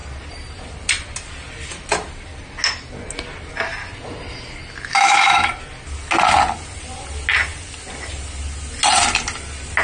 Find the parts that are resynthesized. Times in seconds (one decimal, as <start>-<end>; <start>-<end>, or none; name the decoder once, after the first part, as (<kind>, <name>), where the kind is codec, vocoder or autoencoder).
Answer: 4.9-5.5 (autoencoder, DAC-VAE)